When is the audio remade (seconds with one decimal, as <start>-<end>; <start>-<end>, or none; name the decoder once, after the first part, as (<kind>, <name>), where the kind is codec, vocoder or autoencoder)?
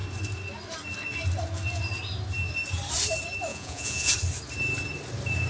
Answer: 3.5-4.1 (vocoder, Vocos)